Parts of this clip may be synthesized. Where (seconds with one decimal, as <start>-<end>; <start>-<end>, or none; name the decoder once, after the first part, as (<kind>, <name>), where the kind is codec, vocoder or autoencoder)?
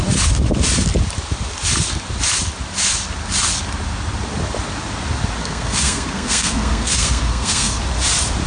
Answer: 5.4-7.8 (codec, SNAC)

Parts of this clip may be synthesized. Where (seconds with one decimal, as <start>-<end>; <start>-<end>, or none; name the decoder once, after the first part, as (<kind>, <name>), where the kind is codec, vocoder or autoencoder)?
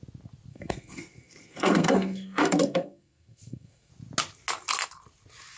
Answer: 0.5-3.9 (codec, SNAC)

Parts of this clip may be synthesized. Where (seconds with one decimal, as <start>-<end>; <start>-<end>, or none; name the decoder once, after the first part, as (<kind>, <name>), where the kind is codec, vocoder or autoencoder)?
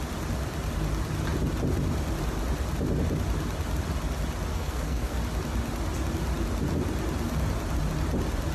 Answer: 4.5-5.2 (codec, SNAC)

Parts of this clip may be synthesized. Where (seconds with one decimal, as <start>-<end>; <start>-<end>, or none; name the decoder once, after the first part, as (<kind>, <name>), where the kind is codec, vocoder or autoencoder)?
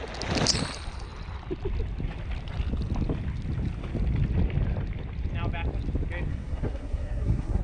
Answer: 6.3-7.6 (codec, SNAC)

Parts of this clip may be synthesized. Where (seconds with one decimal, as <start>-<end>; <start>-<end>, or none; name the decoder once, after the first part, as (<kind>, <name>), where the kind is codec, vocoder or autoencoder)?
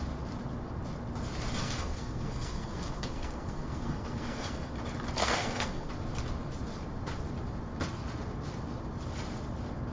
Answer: 1.6-4.7 (codec, SNAC); 5.2-5.9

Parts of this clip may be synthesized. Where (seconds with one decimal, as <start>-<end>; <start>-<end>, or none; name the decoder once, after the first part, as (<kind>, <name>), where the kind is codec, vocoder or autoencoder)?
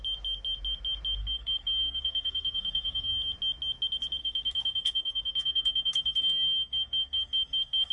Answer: 1.2-3.1 (codec, SNAC); 4.2-7.9